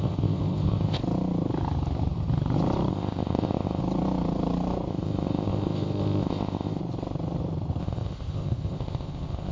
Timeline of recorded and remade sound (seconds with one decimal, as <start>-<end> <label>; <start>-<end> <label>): 0.0-1.0 remade; 1.0-2.9 recorded; 2.9-3.8 remade; 3.8-4.9 recorded; 4.9-6.8 remade; 6.8-7.8 recorded; 7.8-9.5 remade